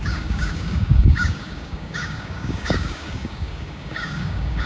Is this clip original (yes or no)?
no